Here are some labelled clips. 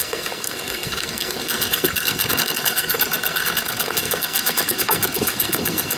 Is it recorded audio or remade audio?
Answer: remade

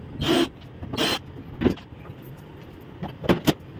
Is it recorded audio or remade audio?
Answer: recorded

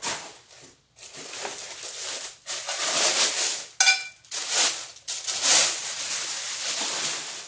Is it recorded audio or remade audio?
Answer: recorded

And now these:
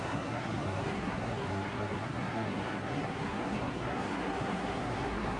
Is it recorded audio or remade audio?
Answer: remade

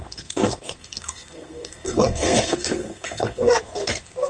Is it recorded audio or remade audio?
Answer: remade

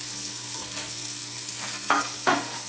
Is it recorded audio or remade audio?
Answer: remade